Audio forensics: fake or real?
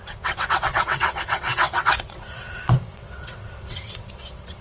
fake